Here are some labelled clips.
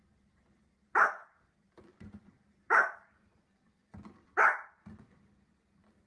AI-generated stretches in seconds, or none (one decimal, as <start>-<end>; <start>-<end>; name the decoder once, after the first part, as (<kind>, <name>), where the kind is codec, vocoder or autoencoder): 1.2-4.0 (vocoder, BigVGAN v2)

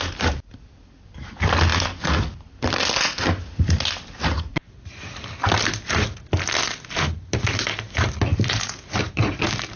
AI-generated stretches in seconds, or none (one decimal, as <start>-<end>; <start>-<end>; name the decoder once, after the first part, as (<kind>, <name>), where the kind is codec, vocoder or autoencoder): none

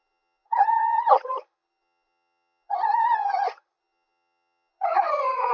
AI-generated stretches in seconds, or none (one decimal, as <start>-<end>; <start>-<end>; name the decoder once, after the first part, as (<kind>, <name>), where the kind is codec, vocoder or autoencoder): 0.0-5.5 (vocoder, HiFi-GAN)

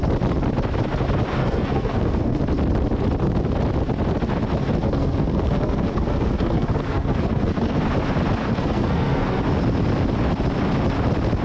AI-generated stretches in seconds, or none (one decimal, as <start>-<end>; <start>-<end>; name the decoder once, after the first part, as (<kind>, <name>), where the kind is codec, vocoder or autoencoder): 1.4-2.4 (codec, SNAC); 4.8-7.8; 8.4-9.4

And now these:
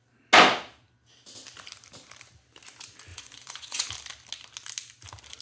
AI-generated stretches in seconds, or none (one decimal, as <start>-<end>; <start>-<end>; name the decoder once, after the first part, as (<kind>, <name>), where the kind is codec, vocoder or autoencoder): 3.1-3.8 (vocoder, Vocos)

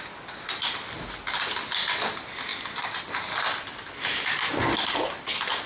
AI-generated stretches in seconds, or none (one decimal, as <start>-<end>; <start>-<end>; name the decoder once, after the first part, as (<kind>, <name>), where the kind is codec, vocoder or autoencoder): 2.5-5.3 (vocoder, BigVGAN v2)